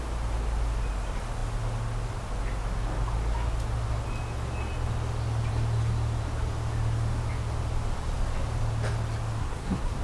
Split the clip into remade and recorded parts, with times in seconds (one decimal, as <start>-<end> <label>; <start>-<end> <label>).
0.0-9.4 recorded; 9.4-10.0 remade